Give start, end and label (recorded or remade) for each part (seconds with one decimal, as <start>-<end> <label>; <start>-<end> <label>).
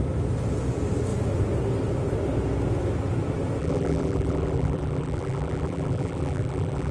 0.0-3.6 recorded; 3.6-6.9 remade